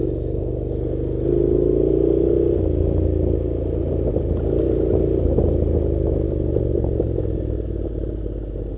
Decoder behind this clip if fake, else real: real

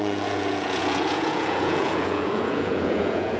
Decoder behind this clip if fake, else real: fake, vocoder, Vocos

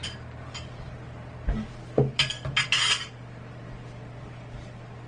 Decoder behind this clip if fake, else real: real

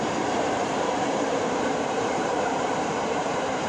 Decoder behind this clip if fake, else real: fake, vocoder, BigVGAN v2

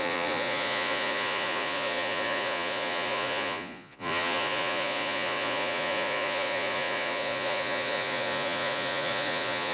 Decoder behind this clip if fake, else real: fake, vocoder, Vocos